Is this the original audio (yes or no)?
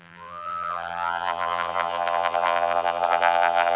no